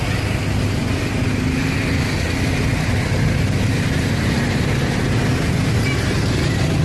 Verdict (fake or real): real